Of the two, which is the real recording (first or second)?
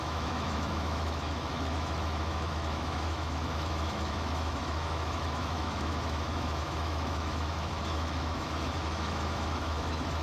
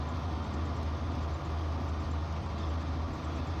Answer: second